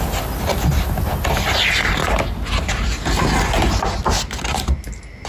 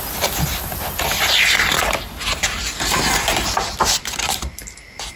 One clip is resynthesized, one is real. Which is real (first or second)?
first